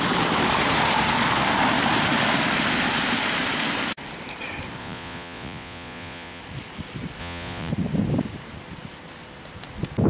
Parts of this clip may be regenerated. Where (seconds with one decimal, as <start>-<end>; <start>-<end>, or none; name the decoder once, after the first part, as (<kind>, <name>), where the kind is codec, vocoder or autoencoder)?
4.8-6.4 (vocoder, Vocos); 7.2-7.7